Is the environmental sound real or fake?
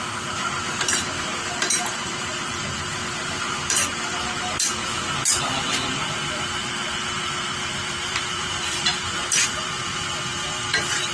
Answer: fake